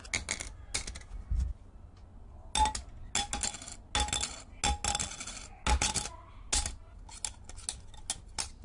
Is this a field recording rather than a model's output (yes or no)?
yes